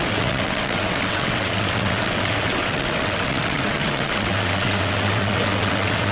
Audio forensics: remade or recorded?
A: remade